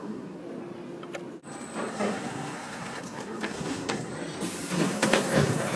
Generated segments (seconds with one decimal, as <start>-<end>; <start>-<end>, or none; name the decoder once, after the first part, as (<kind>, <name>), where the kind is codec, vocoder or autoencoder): 0.0-0.4 (codec, SNAC); 1.9-4.1; 4.7-5.8